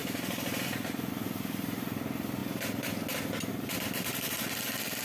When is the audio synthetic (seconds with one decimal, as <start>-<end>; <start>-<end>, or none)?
none